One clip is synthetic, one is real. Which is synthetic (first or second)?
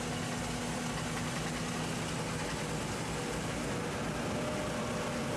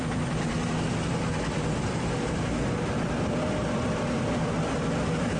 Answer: second